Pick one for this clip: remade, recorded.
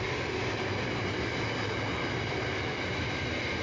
recorded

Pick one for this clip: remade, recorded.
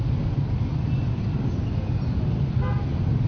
recorded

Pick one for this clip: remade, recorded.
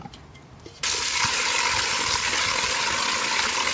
recorded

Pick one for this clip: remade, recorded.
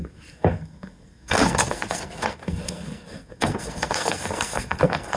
remade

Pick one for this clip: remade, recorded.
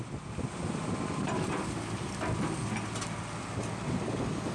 recorded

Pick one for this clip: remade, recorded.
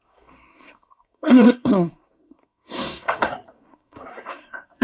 remade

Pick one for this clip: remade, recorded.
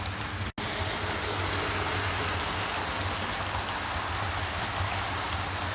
recorded